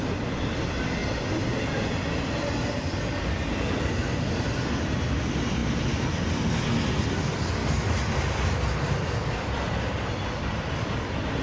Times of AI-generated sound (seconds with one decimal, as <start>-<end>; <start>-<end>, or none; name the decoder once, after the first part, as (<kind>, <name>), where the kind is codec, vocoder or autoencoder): none